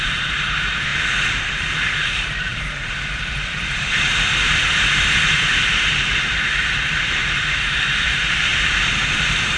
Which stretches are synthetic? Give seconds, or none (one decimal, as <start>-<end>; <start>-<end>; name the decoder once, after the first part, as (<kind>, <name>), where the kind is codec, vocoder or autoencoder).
0.0-9.6 (vocoder, BigVGAN v2)